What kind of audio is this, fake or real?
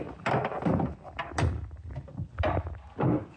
real